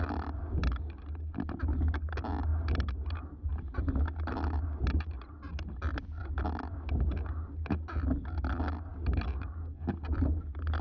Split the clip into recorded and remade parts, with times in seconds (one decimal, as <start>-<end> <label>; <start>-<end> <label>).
0.0-10.8 recorded

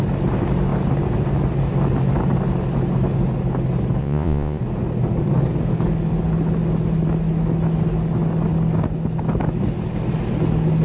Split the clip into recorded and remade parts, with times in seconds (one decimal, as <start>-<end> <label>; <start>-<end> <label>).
0.0-4.0 recorded; 4.0-4.6 remade; 4.6-10.8 recorded

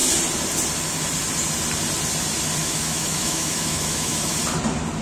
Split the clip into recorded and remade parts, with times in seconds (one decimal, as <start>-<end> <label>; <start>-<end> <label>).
0.0-2.6 recorded; 2.6-4.3 remade; 4.3-5.0 recorded